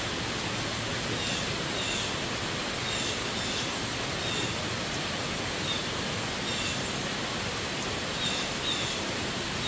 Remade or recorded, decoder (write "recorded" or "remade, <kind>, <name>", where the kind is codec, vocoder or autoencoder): recorded